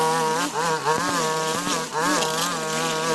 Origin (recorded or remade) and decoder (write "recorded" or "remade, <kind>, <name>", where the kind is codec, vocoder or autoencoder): recorded